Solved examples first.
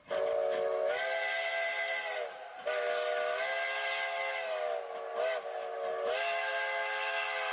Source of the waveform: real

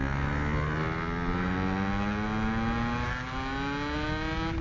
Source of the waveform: real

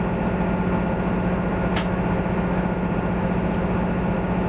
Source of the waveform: real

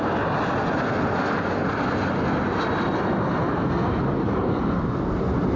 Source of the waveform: real